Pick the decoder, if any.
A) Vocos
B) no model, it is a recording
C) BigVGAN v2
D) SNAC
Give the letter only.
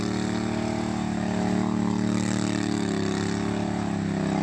B